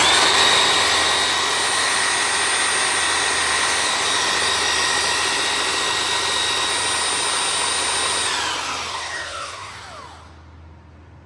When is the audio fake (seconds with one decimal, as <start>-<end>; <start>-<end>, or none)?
8.9-9.7